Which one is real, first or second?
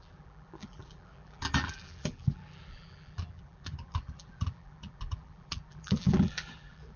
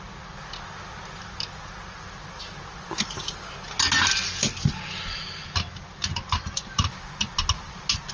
second